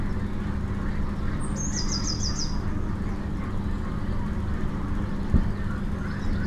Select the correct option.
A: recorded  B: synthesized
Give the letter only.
A